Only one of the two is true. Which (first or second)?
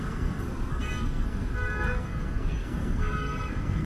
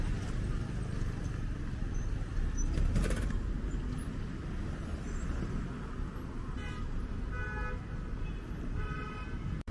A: second